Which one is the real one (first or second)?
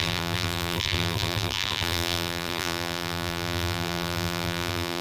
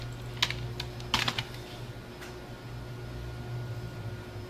second